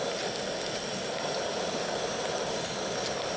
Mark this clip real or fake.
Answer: real